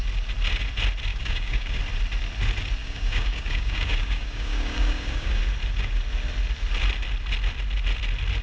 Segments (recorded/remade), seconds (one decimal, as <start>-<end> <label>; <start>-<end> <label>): 0.0-1.1 recorded; 1.1-1.8 remade; 1.8-2.8 recorded; 2.8-5.4 remade; 5.4-8.4 recorded